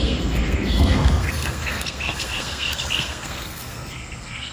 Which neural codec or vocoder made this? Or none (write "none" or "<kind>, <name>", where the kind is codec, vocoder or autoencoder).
codec, SNAC